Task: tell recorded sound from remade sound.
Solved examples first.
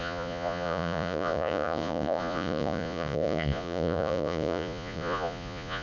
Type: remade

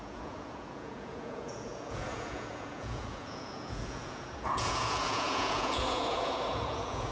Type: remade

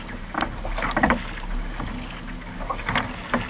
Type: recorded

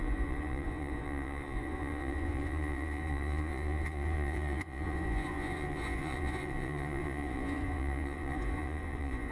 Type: remade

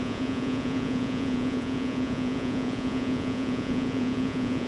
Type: remade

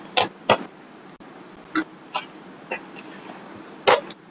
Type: recorded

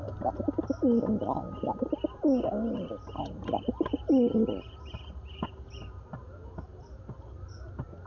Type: recorded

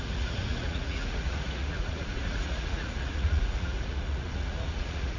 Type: remade